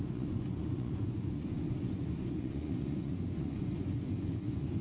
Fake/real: fake